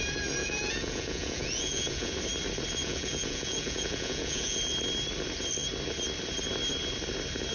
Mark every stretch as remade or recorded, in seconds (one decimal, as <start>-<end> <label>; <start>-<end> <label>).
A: 0.0-0.4 recorded; 0.4-2.1 remade; 2.1-2.8 recorded; 2.8-4.6 remade; 4.6-7.5 recorded